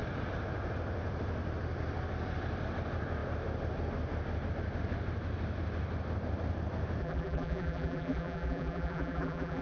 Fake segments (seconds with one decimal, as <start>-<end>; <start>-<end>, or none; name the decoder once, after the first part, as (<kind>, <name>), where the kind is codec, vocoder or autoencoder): 7.0-9.6 (vocoder, BigVGAN v2)